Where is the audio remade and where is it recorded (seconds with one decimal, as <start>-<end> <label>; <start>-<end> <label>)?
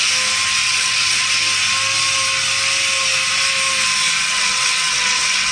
0.0-0.6 recorded; 0.6-1.3 remade; 1.3-4.3 recorded; 4.3-5.5 remade